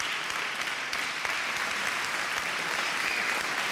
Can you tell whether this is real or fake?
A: real